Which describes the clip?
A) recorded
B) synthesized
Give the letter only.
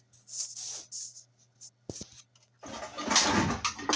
A